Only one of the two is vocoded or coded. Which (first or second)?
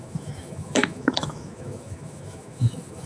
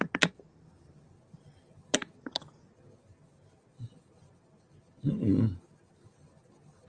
first